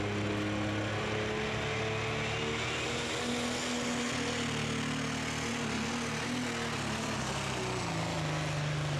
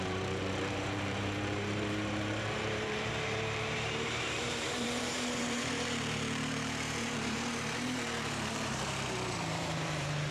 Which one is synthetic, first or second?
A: second